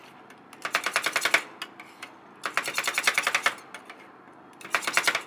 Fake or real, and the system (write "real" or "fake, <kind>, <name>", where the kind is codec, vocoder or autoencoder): real